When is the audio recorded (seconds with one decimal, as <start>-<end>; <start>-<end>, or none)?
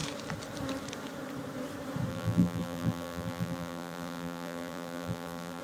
0.0-2.1